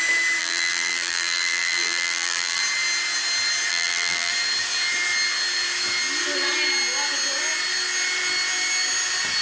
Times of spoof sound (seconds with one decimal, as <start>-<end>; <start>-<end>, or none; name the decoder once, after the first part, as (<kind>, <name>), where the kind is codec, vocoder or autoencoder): 0.4-2.6 (vocoder, BigVGAN v2); 3.7-4.3